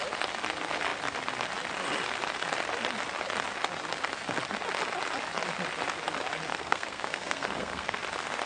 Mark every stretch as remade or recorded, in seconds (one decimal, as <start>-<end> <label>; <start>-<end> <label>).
0.0-6.5 recorded; 6.5-8.0 remade; 8.0-8.5 recorded